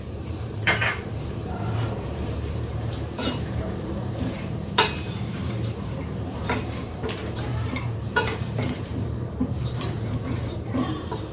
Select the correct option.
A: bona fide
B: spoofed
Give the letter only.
B